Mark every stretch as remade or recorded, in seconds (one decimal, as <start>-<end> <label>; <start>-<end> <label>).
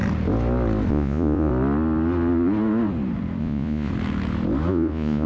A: 0.0-0.9 recorded; 0.9-1.5 remade; 1.5-3.4 recorded; 3.4-3.9 remade; 3.9-4.7 recorded; 4.7-5.3 remade